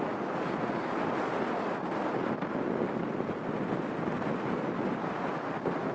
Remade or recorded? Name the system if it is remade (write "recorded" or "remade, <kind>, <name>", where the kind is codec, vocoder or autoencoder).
recorded